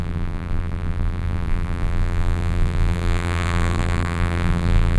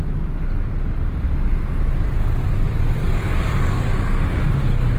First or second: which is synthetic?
first